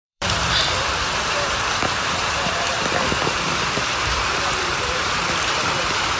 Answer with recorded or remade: remade